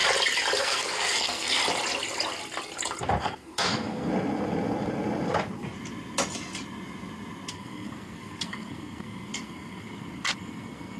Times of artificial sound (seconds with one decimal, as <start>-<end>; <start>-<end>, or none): 0.6-1.6; 3.2-4.1; 7.5-11.0